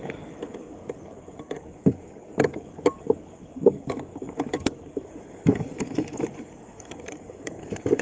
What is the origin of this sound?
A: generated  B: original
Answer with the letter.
A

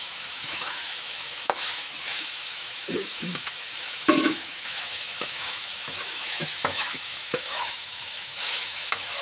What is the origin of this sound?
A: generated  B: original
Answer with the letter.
A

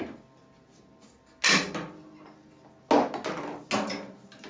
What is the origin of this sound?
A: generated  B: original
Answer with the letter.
B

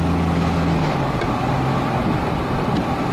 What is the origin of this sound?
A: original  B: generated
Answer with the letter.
A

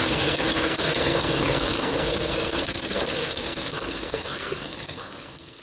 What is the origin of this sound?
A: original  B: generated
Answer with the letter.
B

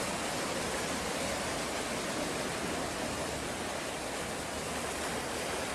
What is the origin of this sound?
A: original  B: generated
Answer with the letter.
A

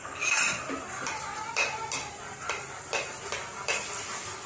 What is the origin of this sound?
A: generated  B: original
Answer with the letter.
B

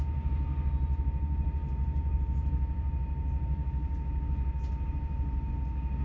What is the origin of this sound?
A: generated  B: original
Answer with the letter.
B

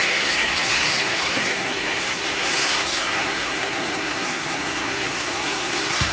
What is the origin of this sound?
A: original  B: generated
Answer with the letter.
B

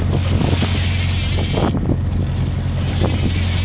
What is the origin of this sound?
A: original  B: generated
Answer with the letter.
A